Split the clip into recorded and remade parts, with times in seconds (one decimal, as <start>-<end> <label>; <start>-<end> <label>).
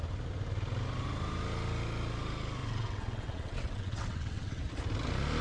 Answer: 0.0-2.6 recorded; 2.6-4.6 remade; 4.6-5.4 recorded